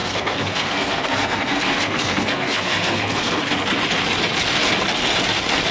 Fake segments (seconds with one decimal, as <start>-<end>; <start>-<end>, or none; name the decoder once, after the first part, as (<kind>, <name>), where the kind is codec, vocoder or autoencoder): 0.0-3.4 (codec, SNAC)